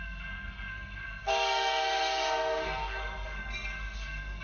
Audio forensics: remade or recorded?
remade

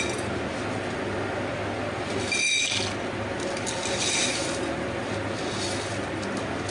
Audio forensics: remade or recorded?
recorded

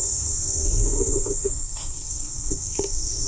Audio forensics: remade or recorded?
remade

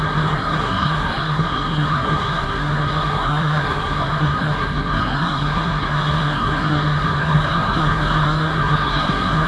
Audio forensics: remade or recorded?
remade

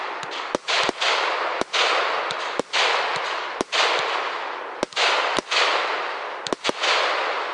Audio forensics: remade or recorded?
recorded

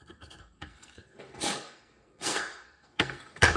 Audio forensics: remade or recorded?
remade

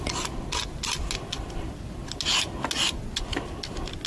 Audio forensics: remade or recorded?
recorded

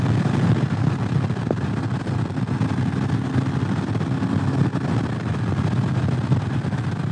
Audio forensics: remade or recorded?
recorded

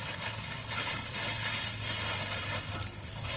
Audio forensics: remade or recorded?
recorded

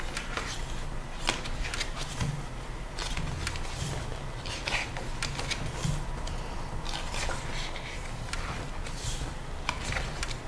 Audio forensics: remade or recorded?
recorded